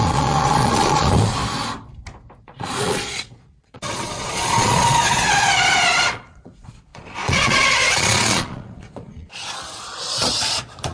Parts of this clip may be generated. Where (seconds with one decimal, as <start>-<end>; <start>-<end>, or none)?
0.0-1.4; 2.4-10.9